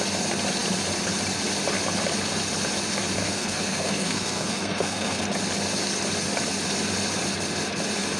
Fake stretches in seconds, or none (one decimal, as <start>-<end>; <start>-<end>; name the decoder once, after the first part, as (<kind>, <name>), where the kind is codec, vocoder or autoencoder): 3.2-5.2 (codec, SNAC)